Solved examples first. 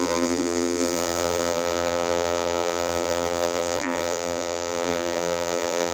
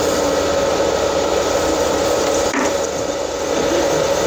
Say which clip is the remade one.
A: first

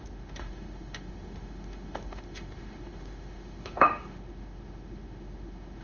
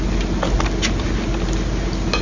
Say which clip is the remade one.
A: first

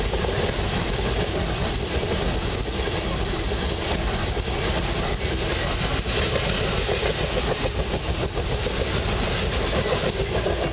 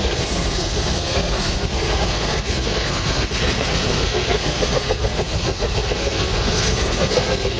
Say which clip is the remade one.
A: second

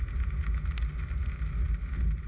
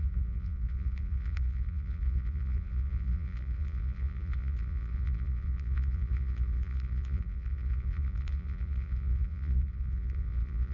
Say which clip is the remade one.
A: second